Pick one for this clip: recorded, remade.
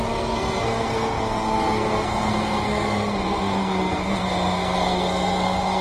remade